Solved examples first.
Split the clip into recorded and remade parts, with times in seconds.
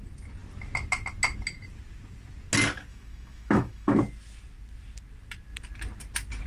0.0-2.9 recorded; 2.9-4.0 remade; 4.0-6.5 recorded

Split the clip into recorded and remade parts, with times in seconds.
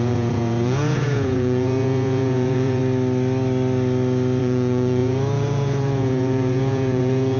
0.0-2.8 remade; 2.8-4.4 recorded; 4.4-7.4 remade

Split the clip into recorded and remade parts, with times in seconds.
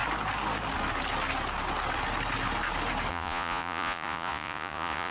0.0-3.1 recorded; 3.1-5.1 remade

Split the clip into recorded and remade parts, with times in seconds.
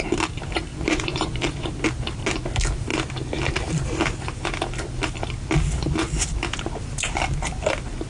0.0-0.7 recorded; 0.7-1.7 remade; 1.7-8.1 recorded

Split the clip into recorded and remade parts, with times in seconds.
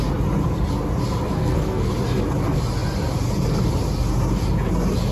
0.0-1.3 recorded; 1.3-1.9 remade; 1.9-5.1 recorded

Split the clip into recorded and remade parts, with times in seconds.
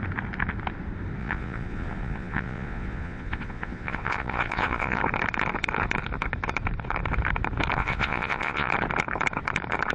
0.0-1.2 recorded; 1.2-5.0 remade; 5.0-7.8 recorded; 7.8-8.7 remade; 8.7-9.9 recorded